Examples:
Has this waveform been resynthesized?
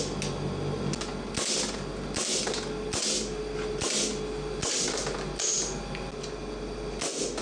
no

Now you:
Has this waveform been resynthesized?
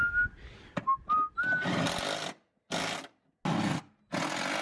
no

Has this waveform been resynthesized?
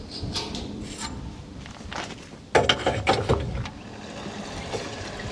no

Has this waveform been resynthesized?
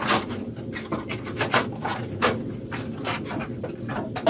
no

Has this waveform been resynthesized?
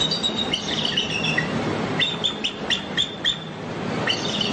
yes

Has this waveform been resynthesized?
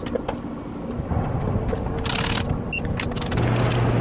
no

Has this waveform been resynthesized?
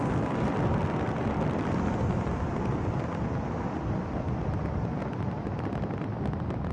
no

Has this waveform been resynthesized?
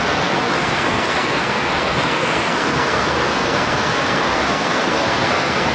yes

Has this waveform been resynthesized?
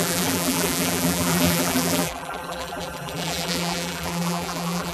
yes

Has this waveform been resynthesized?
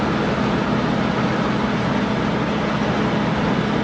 no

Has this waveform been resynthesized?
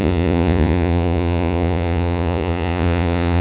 yes